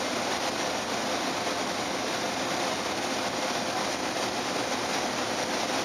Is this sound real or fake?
real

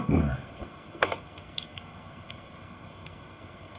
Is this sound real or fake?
fake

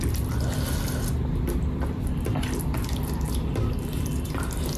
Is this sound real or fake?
real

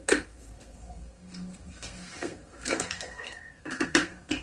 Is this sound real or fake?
fake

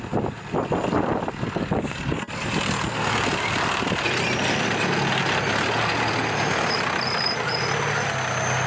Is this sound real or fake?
real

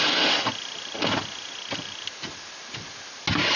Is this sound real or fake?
real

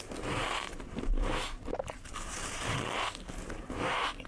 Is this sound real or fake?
real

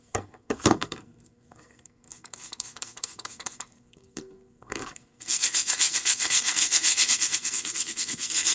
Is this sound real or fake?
fake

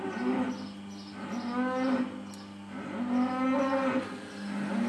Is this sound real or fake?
real